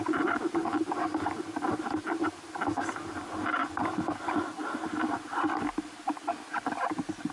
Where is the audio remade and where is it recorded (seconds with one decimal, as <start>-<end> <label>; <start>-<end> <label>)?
0.0-7.3 recorded